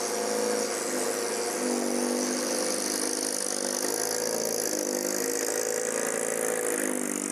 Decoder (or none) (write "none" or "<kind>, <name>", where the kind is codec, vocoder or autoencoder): none